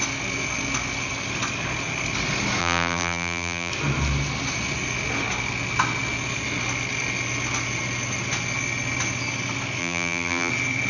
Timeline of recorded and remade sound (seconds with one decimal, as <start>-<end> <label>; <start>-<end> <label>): 0.0-2.6 recorded; 2.6-3.7 remade; 3.7-9.8 recorded; 9.8-10.5 remade; 10.5-10.9 recorded